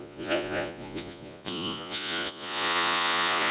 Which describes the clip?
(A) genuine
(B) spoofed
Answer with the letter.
B